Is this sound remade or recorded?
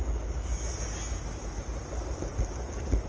recorded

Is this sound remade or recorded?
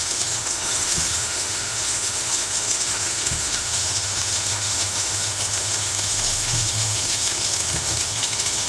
remade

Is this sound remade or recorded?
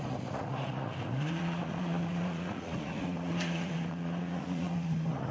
remade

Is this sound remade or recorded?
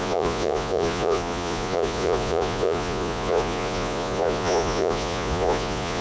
remade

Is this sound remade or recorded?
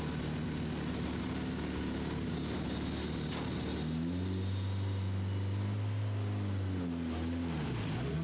recorded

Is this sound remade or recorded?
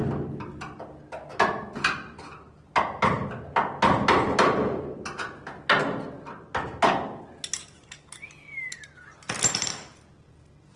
recorded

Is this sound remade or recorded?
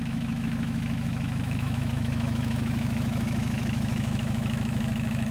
remade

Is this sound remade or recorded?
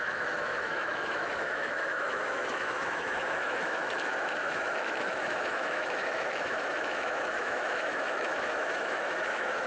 remade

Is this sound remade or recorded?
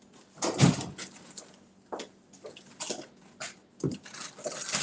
recorded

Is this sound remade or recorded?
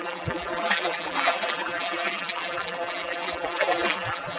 remade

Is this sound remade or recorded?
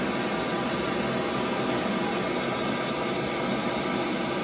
recorded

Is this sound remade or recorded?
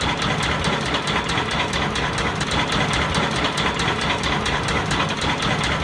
recorded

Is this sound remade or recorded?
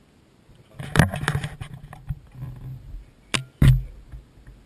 recorded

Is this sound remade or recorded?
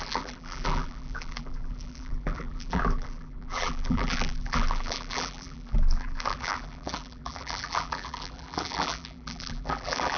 remade